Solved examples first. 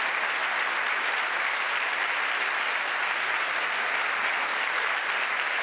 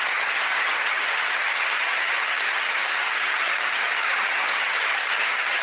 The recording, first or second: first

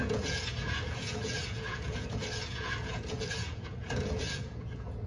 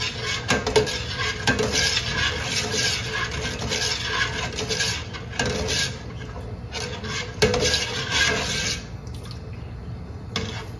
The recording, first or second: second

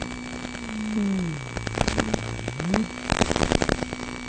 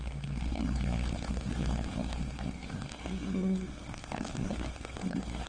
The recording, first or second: first